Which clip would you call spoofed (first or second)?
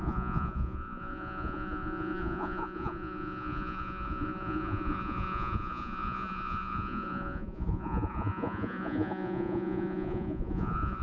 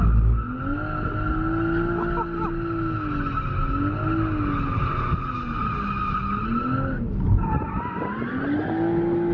first